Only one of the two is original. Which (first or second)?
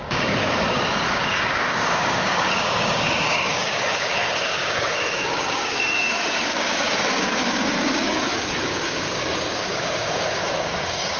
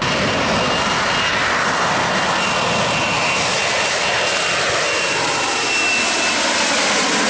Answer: second